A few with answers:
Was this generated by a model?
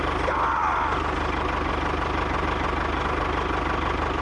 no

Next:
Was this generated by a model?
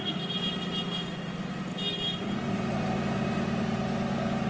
no